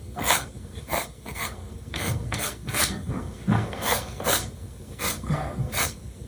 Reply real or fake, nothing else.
fake